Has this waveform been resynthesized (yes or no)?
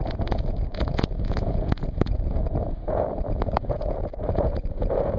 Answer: yes